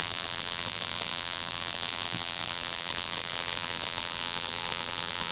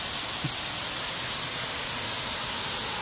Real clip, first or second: second